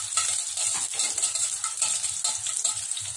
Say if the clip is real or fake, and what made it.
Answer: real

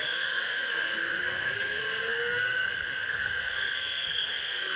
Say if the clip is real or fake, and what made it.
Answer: fake, codec, SNAC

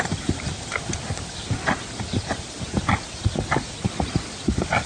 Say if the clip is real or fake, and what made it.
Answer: real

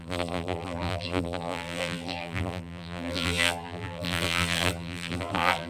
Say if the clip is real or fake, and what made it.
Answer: fake, vocoder, BigVGAN v2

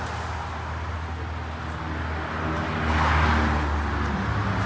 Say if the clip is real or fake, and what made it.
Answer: real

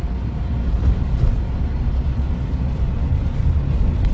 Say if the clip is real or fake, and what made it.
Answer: real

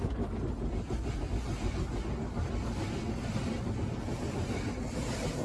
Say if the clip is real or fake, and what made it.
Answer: real